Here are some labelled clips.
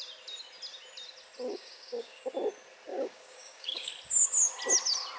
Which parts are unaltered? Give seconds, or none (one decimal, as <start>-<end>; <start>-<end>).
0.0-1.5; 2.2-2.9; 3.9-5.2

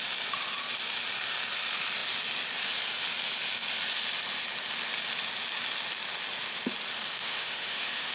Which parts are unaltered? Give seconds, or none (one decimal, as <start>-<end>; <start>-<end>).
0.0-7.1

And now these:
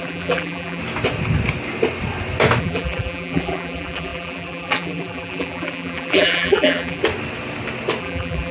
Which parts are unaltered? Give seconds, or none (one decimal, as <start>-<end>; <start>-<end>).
0.8-2.6; 7.0-8.0